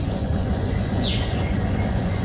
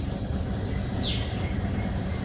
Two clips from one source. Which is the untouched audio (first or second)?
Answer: second